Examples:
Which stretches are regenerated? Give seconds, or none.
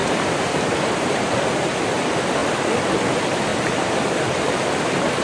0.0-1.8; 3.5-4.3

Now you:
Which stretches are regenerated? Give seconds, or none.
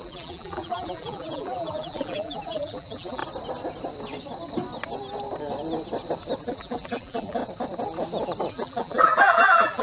0.0-3.2; 6.4-7.4; 8.5-9.8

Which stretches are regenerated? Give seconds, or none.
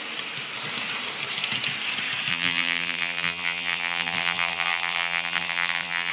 2.3-6.1